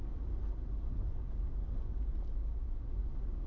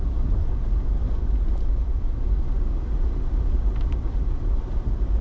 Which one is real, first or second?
first